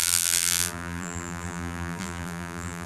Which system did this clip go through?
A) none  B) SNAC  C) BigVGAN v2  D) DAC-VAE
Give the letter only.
C